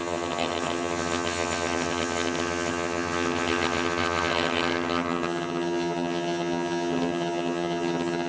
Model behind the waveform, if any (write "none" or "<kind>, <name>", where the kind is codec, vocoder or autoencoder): vocoder, HiFi-GAN